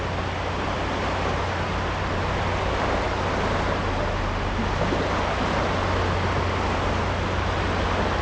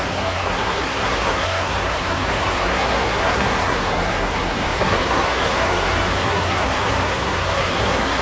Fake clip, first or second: second